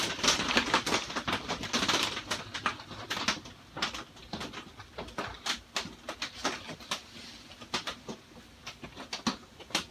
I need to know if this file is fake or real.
real